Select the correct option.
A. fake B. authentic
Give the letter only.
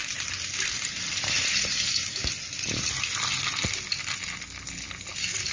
B